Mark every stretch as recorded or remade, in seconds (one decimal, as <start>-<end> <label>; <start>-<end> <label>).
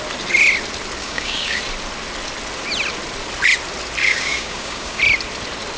0.0-1.0 recorded; 1.0-1.6 remade; 1.6-4.0 recorded; 4.0-5.0 remade; 5.0-5.8 recorded